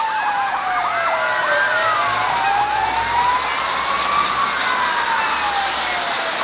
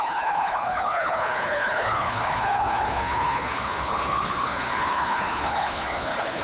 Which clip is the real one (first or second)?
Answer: first